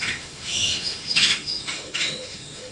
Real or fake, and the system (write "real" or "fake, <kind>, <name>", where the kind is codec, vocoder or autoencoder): fake, autoencoder, DAC-VAE